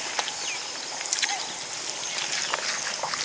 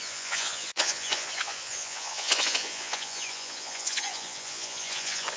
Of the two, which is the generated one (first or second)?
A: second